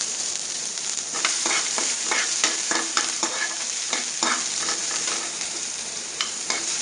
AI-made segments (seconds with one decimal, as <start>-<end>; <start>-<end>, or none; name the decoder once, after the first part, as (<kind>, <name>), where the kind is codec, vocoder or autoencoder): 0.0-4.0 (vocoder, BigVGAN v2); 4.8-6.8